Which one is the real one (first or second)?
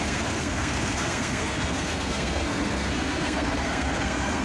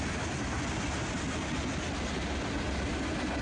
second